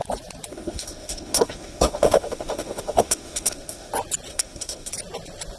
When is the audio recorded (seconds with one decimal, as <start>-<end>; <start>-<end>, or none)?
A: 0.0-0.5; 3.9-4.3; 4.9-5.6